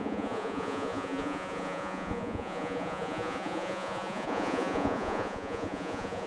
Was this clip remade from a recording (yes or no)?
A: yes